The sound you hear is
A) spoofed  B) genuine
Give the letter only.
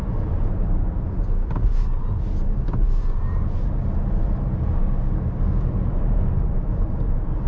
B